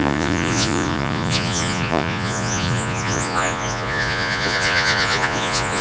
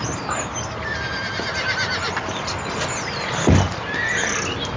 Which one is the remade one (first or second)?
first